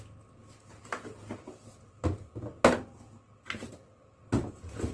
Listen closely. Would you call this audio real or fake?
real